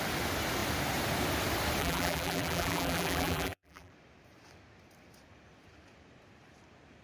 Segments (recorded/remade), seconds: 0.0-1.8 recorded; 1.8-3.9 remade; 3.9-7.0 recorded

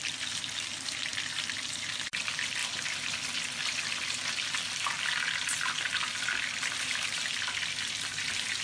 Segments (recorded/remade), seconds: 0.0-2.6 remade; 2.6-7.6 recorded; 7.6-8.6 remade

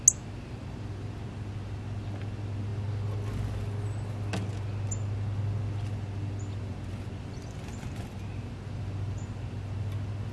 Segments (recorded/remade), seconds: 0.0-10.3 recorded